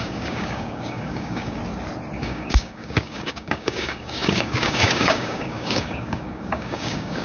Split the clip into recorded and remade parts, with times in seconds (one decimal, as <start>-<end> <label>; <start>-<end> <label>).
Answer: 0.0-1.6 remade; 1.6-2.2 recorded; 2.2-7.2 remade